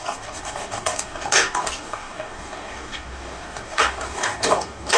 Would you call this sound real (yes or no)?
no